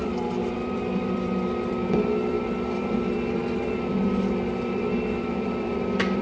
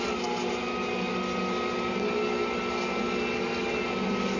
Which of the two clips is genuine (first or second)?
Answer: second